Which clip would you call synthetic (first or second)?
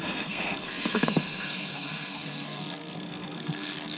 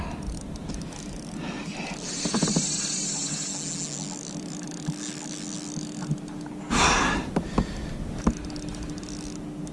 first